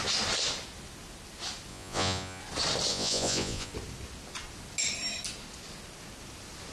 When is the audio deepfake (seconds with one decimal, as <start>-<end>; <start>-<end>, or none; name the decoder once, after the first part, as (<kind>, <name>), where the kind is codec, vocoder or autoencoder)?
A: 1.7-2.4 (vocoder, Vocos); 2.9-3.7